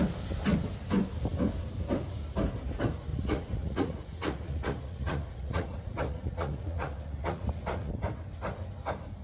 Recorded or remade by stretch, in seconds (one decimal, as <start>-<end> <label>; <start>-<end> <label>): 0.0-3.1 recorded; 3.1-7.9 remade; 7.9-9.2 recorded